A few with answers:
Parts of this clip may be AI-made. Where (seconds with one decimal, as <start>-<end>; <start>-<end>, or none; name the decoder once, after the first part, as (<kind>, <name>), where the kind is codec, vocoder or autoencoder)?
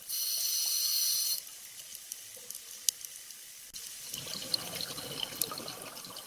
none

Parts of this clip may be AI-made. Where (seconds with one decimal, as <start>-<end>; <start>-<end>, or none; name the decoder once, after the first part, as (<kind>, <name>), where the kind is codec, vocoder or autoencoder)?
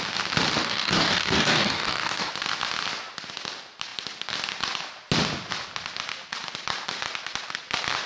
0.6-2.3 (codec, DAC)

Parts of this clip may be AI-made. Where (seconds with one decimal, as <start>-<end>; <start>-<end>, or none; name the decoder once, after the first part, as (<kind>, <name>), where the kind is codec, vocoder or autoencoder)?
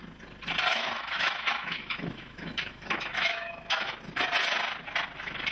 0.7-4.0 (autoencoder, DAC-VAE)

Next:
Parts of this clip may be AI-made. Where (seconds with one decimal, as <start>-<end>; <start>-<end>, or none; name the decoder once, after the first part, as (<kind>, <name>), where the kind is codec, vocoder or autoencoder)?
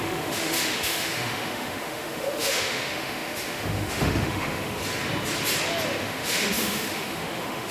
0.0-4.8 (autoencoder, DAC-VAE); 6.0-7.7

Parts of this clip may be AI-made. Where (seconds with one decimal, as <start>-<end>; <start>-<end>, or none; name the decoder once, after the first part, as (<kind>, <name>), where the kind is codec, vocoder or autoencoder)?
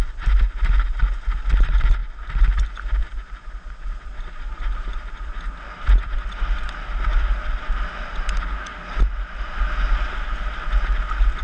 none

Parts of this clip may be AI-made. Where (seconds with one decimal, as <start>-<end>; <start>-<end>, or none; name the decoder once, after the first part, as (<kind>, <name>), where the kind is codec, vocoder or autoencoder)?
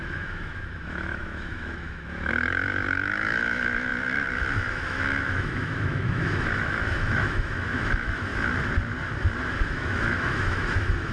0.0-8.3 (autoencoder, DAC-VAE); 9.6-11.1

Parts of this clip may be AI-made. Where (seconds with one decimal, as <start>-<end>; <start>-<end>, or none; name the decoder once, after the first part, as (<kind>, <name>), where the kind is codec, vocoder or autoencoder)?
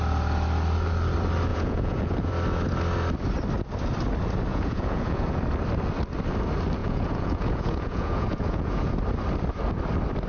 1.5-2.3 (vocoder, Vocos); 4.5-5.4; 6.8-8.9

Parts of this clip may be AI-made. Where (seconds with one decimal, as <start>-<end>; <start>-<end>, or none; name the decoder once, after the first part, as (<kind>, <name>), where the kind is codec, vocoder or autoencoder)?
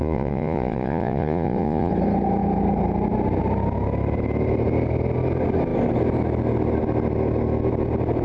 0.0-1.9 (vocoder, Vocos)